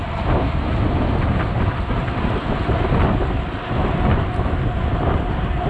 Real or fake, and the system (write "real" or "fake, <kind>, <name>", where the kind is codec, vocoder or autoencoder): real